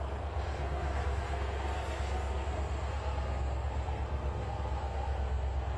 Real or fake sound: fake